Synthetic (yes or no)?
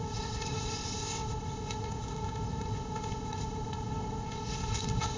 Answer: yes